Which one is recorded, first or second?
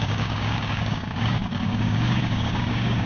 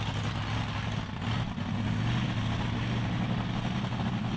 second